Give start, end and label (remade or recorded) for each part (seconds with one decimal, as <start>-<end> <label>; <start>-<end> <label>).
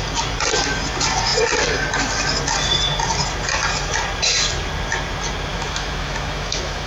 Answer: 0.0-5.5 recorded; 5.5-6.9 remade